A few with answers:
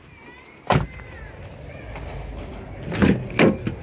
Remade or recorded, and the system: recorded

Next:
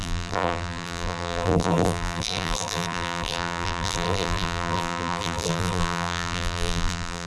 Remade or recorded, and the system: remade, vocoder, BigVGAN v2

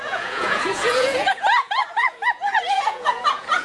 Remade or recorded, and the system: remade, vocoder, Vocos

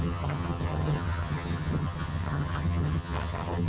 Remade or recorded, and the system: remade, vocoder, HiFi-GAN